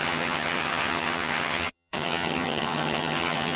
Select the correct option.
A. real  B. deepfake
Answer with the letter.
B